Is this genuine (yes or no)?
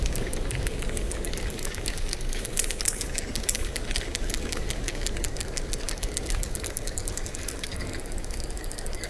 no